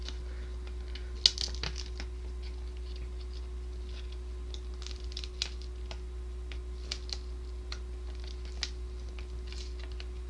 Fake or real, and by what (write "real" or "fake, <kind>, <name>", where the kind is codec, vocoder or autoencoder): real